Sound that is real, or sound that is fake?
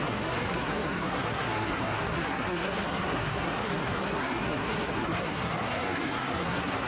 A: fake